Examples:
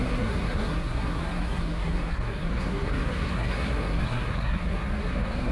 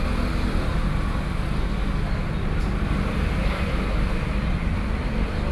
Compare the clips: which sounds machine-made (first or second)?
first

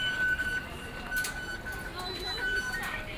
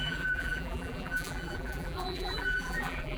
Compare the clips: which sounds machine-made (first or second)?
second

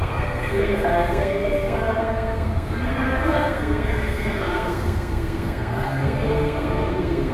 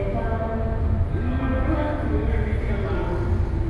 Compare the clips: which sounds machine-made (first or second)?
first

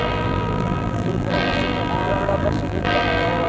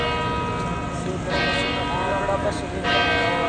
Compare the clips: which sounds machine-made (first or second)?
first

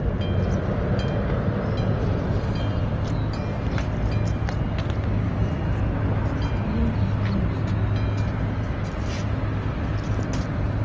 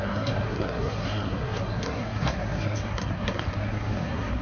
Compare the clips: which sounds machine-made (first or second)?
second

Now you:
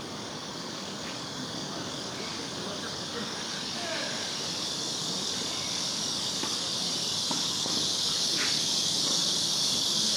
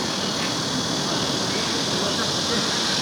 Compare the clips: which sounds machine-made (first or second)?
first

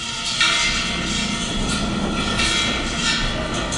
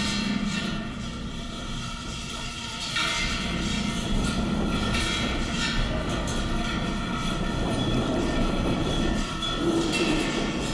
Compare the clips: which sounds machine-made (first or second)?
second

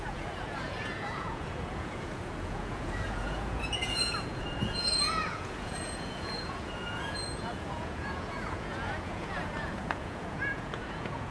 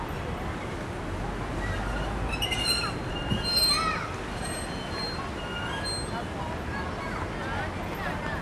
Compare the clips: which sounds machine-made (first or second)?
first